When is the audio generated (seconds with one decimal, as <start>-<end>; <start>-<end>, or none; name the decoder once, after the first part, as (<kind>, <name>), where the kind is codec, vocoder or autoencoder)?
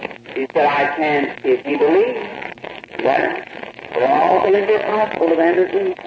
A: 2.3-6.1 (vocoder, WaveNeXt)